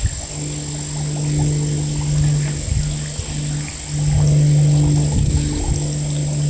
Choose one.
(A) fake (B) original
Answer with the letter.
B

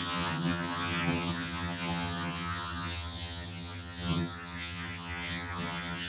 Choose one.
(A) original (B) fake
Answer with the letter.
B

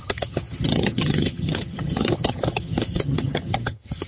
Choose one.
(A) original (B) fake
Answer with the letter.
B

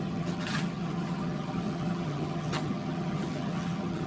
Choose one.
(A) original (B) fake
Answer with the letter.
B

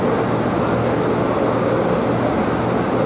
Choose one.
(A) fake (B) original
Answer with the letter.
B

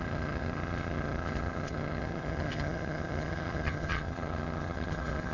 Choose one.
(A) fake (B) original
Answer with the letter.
A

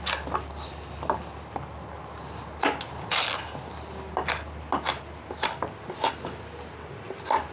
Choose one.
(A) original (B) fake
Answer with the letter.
A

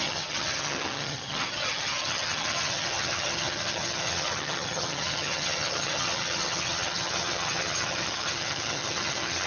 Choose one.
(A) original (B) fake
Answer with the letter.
B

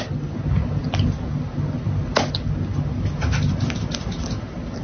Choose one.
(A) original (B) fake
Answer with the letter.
A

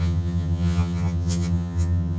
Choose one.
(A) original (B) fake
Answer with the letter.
B